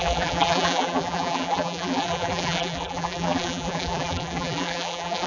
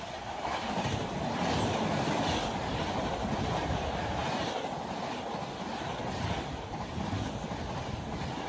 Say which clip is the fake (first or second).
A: first